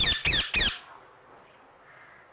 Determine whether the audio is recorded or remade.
recorded